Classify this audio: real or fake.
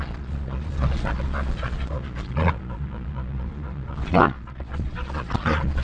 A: fake